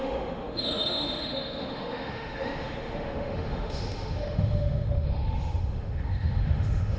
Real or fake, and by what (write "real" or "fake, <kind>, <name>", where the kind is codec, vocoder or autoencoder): fake, autoencoder, DAC-VAE